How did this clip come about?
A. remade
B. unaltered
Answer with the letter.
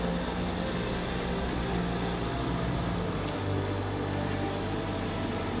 B